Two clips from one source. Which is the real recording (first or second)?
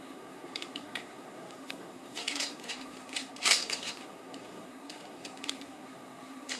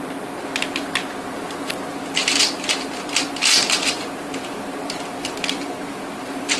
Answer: second